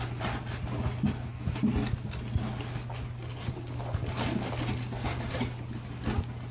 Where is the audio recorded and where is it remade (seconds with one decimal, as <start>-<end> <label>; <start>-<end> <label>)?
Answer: 0.0-6.5 recorded

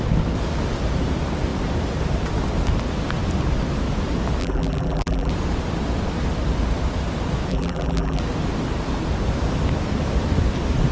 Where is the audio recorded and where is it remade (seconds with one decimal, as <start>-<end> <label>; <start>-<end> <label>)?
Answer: 0.0-4.4 recorded; 4.4-5.3 remade; 5.3-7.5 recorded; 7.5-8.2 remade; 8.2-10.9 recorded

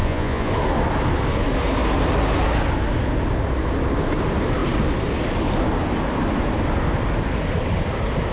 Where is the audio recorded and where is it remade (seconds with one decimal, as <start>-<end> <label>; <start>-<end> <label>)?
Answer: 0.0-0.5 remade; 0.5-8.3 recorded